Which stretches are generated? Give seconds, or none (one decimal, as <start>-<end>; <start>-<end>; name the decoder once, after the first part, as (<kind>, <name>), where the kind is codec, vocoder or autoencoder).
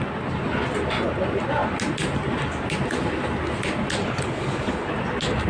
4.0-4.9 (codec, HILCodec)